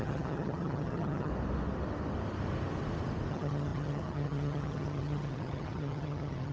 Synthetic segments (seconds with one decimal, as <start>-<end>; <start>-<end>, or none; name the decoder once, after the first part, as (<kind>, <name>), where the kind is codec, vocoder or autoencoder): 0.0-1.3 (vocoder, HiFi-GAN); 3.3-6.5